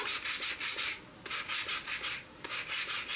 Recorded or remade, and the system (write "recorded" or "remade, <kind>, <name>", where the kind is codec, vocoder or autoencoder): recorded